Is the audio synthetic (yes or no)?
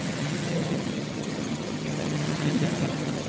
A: yes